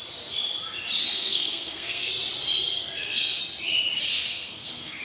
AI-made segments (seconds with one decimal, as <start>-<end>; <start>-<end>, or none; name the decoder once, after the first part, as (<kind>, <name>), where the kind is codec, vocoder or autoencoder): 1.0-2.1 (codec, SNAC); 2.8-3.4; 4.1-5.0